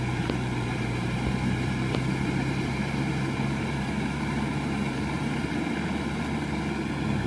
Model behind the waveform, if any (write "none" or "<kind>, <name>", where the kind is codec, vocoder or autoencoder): vocoder, BigVGAN v2